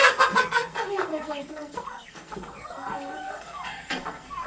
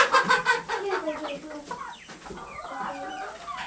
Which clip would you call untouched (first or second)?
second